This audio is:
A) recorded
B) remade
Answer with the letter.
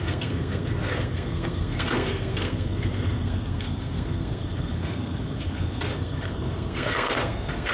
B